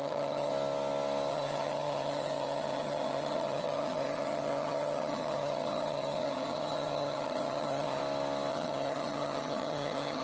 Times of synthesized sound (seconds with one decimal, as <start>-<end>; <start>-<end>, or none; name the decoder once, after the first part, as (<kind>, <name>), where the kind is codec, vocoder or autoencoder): 0.0-0.5 (vocoder, HiFi-GAN); 1.3-8.0; 8.5-10.2

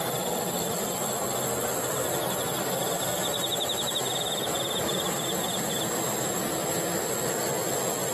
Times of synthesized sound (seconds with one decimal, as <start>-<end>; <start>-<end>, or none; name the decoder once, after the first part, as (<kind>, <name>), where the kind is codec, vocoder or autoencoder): 3.1-7.0 (vocoder, BigVGAN v2)

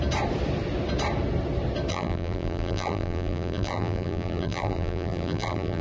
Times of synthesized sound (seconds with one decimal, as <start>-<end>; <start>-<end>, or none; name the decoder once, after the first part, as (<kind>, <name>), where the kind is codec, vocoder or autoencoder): 1.9-5.8 (vocoder, BigVGAN v2)

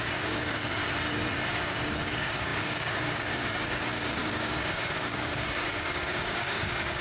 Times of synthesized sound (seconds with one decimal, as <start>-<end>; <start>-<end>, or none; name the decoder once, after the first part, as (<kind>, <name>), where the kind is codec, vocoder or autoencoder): 0.0-0.8 (codec, DAC); 1.6-7.0

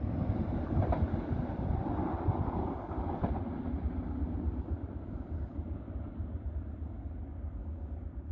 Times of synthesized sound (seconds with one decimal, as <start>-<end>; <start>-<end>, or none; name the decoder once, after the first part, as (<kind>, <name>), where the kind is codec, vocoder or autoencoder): none

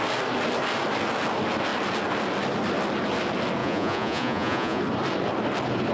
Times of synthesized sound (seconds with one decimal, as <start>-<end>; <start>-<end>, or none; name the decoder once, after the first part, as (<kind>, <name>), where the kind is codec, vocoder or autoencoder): 3.6-4.8 (vocoder, Vocos)

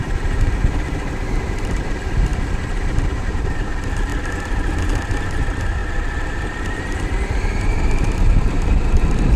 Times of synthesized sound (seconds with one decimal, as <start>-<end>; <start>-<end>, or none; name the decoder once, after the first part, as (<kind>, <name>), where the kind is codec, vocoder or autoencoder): 0.0-9.4 (vocoder, BigVGAN v2)

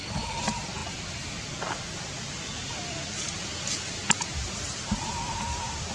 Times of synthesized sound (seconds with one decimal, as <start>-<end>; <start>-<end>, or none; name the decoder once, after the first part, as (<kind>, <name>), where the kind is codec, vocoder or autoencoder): none